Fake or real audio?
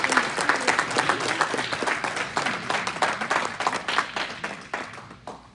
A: real